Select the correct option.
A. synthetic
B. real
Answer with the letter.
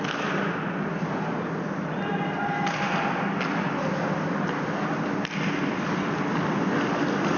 B